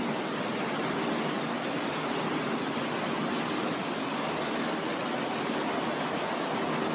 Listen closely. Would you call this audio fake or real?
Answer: real